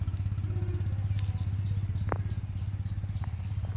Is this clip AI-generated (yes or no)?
no